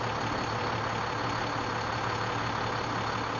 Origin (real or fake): real